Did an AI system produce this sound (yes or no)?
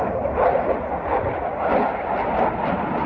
no